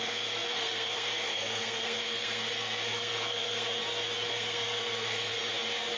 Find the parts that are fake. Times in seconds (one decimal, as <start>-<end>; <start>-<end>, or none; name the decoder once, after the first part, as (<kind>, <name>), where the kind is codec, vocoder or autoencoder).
0.0-3.8 (codec, SNAC); 4.3-5.3